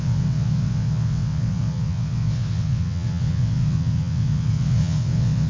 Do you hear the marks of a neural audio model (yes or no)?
yes